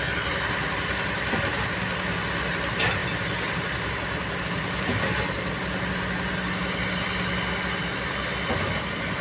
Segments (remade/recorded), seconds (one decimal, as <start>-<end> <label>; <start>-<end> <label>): 0.0-9.2 recorded

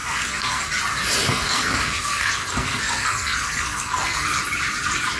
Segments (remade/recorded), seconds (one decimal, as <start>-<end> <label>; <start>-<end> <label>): 0.0-0.7 remade; 0.7-1.3 recorded; 1.3-4.4 remade; 4.4-5.2 recorded

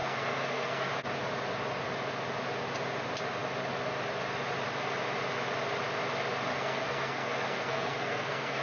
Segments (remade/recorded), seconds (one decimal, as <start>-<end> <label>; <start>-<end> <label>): 0.0-0.9 remade; 0.9-6.5 recorded; 6.5-8.6 remade

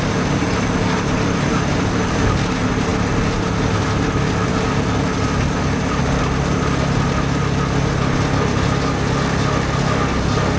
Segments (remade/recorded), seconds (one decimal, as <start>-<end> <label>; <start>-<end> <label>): 0.0-10.6 recorded

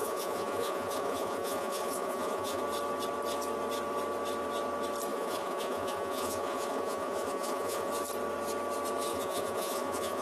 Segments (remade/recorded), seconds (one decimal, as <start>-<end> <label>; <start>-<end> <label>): 0.0-2.6 remade; 2.6-5.1 recorded; 5.1-7.9 remade; 7.9-9.1 recorded; 9.1-10.2 remade

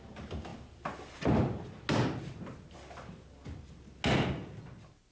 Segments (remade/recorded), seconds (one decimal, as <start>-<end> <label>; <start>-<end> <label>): 0.0-5.1 recorded

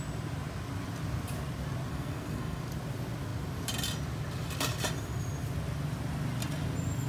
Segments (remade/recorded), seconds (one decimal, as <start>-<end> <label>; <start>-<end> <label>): 0.0-1.9 recorded; 1.9-2.6 remade; 2.6-7.1 recorded

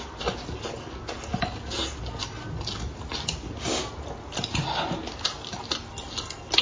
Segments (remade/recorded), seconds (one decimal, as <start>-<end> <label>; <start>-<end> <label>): 0.0-6.6 recorded